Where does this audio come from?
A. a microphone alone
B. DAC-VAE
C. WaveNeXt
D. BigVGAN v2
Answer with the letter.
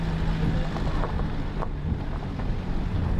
A